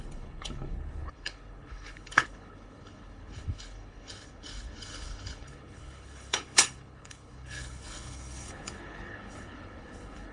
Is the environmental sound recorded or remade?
remade